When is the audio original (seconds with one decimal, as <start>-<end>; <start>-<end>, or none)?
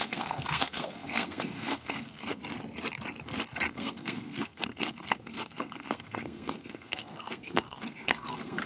2.4-3.7